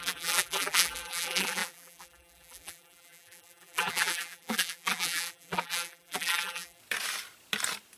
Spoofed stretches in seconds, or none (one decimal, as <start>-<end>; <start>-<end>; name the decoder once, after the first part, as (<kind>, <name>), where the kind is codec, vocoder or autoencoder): 0.0-6.8 (vocoder, BigVGAN v2)